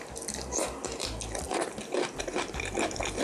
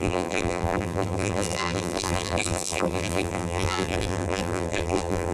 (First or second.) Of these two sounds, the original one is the first